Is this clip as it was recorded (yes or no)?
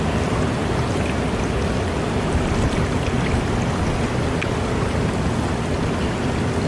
yes